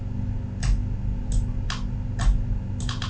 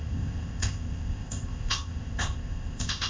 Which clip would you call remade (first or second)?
second